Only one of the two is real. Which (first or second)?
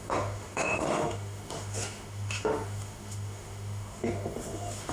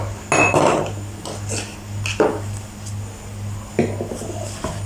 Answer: second